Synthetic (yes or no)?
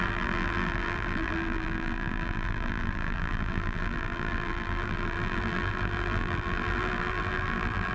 yes